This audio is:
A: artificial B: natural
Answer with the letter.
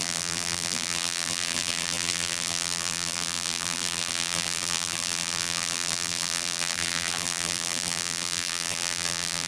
A